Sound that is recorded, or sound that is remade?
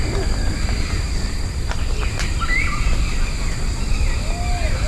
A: recorded